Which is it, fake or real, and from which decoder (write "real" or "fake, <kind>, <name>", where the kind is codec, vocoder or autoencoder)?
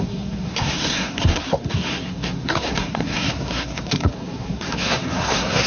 fake, codec, SNAC